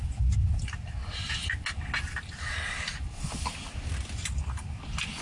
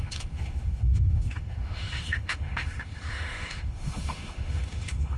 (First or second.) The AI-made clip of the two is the second